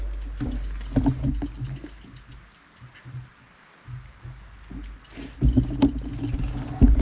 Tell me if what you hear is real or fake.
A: real